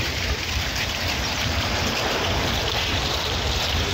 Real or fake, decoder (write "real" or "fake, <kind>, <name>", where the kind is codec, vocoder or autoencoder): fake, vocoder, BigVGAN v2